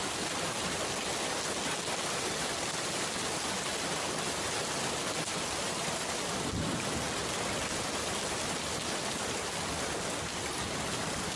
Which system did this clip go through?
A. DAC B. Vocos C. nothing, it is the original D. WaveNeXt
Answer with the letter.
C